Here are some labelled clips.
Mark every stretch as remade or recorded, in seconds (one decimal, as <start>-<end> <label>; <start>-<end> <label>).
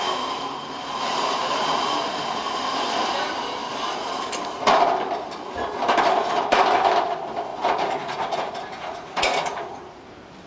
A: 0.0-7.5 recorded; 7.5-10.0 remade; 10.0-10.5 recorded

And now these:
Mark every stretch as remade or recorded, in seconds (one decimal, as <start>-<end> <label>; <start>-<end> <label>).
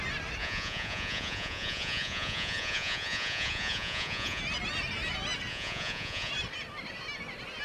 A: 0.0-0.4 recorded; 0.4-4.4 remade; 4.4-5.5 recorded; 5.5-6.3 remade; 6.3-7.6 recorded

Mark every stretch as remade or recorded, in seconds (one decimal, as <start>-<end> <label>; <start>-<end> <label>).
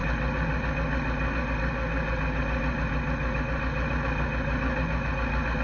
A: 0.0-5.6 recorded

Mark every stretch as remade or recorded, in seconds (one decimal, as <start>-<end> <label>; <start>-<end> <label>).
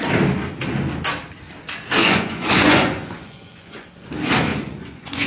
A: 0.0-2.0 recorded; 2.0-3.9 remade; 3.9-4.5 recorded; 4.5-5.3 remade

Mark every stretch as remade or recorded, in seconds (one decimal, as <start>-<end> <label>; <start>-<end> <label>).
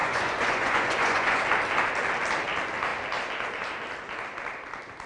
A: 0.0-1.4 remade; 1.4-5.1 recorded